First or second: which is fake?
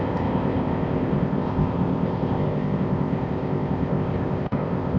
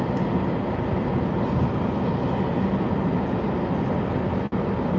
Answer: first